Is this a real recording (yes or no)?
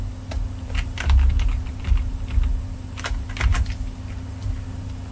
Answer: yes